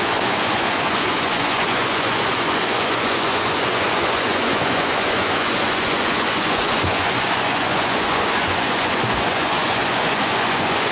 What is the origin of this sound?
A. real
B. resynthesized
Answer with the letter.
B